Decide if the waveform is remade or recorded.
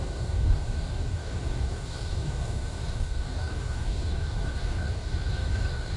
remade